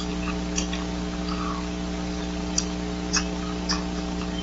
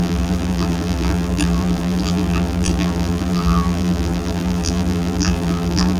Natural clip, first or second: first